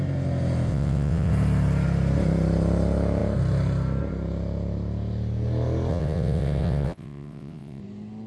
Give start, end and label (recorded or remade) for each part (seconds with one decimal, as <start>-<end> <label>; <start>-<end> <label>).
0.0-0.7 recorded; 0.7-1.3 remade; 1.3-5.9 recorded; 5.9-7.8 remade; 7.8-8.3 recorded